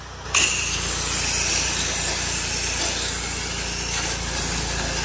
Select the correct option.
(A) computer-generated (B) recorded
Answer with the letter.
B